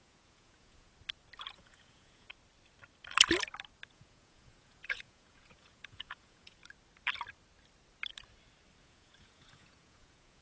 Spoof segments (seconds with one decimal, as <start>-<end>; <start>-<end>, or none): 0.0-0.9; 1.5-2.3; 3.9-6.6; 8.8-10.4